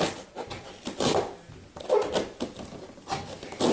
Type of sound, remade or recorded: recorded